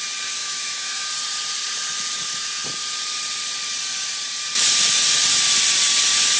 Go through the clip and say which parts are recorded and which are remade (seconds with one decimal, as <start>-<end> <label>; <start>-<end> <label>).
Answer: 0.0-0.4 recorded; 0.4-1.1 remade; 1.1-6.4 recorded